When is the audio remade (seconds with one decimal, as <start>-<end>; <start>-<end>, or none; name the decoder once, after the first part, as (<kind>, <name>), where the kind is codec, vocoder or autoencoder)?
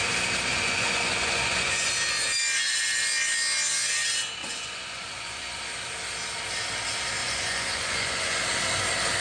0.5-1.9 (vocoder, Vocos); 4.4-5.6; 7.2-8.4